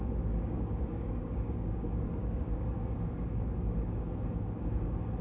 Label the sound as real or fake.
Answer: fake